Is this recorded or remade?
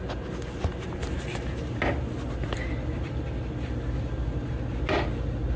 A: recorded